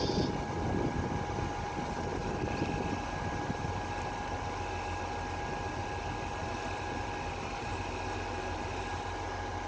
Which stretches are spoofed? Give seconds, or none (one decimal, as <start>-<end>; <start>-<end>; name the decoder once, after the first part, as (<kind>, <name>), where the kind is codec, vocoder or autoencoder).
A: none